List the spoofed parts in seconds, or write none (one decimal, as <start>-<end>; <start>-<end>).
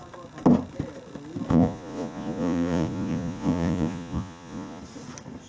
1.5-4.8